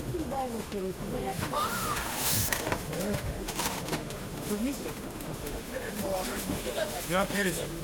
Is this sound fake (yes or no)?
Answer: yes